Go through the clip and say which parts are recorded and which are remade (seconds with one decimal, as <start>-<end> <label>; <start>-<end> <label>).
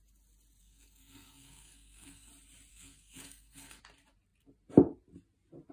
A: 0.0-0.6 recorded; 0.6-2.3 remade; 2.3-2.7 recorded; 2.7-3.8 remade; 3.8-5.7 recorded